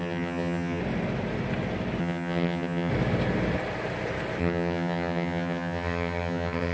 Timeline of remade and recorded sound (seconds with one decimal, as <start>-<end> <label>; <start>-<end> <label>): 0.0-0.8 remade; 0.8-2.0 recorded; 2.0-2.9 remade; 2.9-4.4 recorded; 4.4-6.7 remade